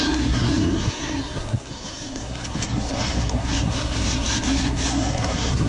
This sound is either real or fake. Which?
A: fake